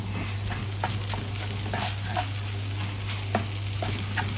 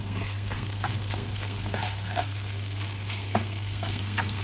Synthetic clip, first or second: second